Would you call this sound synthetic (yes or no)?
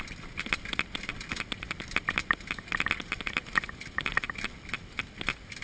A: no